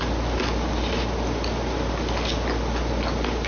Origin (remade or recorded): recorded